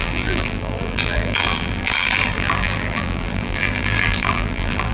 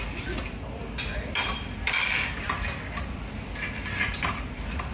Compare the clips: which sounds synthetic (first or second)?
first